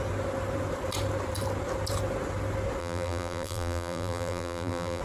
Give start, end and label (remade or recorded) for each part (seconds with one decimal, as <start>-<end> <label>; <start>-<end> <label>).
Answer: 0.0-2.8 recorded; 2.8-5.0 remade